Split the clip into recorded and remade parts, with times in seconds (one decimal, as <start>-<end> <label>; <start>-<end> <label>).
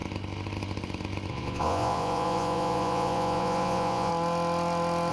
0.0-1.3 recorded; 1.3-4.1 remade; 4.1-5.1 recorded